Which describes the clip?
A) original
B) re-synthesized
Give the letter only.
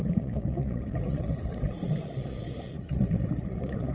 B